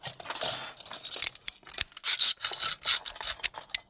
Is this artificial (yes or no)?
no